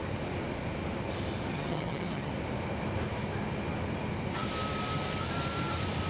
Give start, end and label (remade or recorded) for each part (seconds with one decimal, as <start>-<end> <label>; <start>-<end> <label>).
0.0-1.5 recorded; 1.5-2.3 remade; 2.3-6.1 recorded